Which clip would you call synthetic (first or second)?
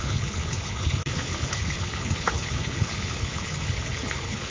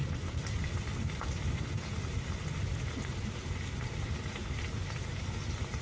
first